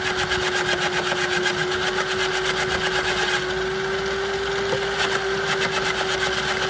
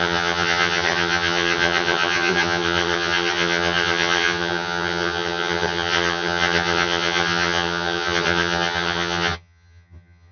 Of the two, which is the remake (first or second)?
second